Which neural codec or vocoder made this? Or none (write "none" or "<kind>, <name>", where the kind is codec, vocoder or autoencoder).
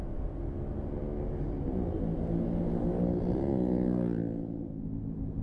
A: none